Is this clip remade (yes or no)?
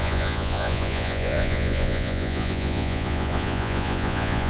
yes